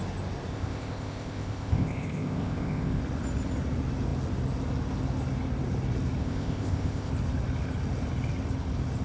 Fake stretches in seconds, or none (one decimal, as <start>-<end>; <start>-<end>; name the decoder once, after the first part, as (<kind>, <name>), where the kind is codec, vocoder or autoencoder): 0.5-3.0 (codec, ZipCodec); 6.2-7.1